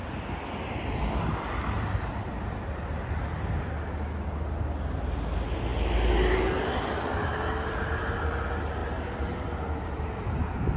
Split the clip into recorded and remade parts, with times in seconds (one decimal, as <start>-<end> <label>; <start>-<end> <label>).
0.0-2.8 remade; 2.8-10.8 recorded